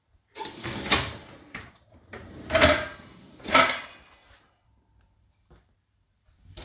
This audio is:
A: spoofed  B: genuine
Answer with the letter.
A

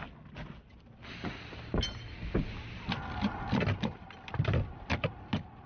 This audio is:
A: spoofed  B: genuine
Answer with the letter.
B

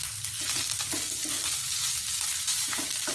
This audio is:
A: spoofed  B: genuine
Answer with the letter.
B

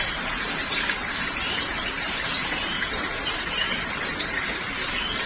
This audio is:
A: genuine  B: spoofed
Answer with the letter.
B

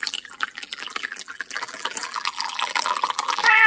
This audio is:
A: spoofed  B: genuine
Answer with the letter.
A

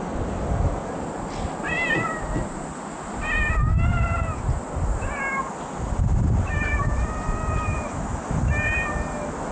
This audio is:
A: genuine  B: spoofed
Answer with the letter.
A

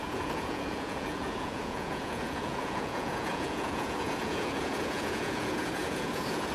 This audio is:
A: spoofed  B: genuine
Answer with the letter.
A